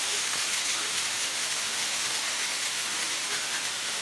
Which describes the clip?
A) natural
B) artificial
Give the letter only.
B